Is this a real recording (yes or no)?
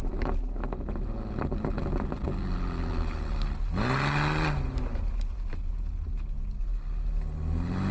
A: yes